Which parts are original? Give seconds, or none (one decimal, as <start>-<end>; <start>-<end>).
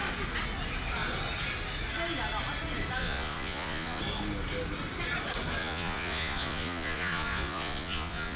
0.0-3.0; 4.0-5.6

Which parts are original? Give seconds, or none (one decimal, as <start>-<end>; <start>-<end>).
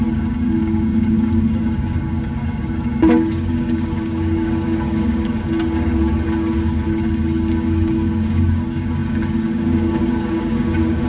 none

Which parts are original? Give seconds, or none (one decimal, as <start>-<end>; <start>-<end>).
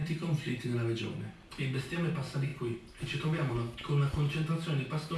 0.6-2.5; 3.5-5.2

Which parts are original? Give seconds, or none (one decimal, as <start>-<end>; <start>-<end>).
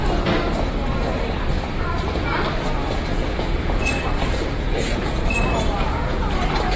0.0-2.8; 6.3-6.8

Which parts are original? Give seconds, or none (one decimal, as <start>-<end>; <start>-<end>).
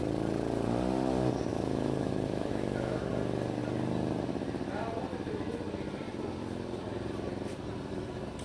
0.0-1.5; 3.1-8.4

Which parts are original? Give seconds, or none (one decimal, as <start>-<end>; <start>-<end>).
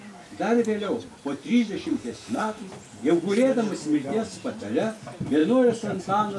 0.0-1.9; 2.6-6.4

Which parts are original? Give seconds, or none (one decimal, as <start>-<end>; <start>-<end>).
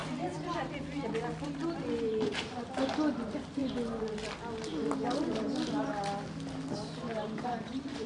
0.0-8.1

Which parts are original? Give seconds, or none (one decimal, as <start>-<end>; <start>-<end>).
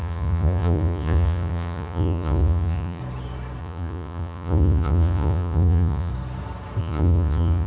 3.0-3.6; 6.1-6.8